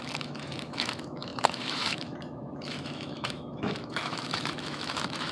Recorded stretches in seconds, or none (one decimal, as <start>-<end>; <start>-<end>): none